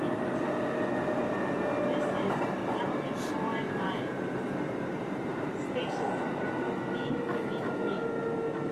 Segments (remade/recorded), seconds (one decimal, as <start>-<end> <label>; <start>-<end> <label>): 0.0-2.6 recorded; 2.6-6.4 remade; 6.4-8.7 recorded